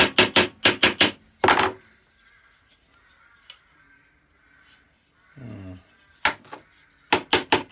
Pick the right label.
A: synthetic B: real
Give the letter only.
B